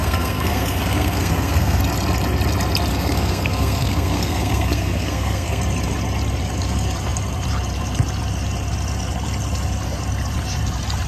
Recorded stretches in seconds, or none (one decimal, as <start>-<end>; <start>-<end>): 1.8-2.9; 5.6-11.1